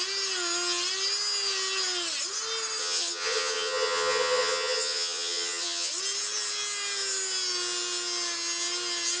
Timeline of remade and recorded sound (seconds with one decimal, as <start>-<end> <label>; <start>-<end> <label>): 0.0-2.8 recorded; 2.8-5.9 remade; 5.9-9.2 recorded